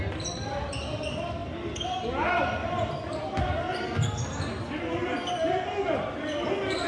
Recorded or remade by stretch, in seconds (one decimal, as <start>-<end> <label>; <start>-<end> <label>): 0.0-6.9 recorded